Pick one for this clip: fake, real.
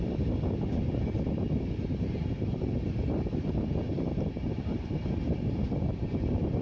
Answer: real